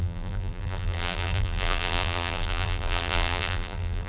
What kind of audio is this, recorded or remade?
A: remade